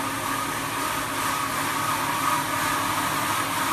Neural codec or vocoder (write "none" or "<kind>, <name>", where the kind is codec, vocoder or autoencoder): none